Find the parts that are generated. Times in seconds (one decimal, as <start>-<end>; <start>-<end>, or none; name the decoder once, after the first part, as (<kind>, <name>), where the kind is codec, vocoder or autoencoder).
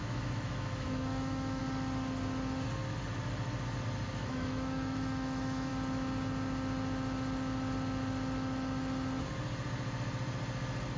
0.0-1.6 (autoencoder, DAC-VAE); 4.1-5.7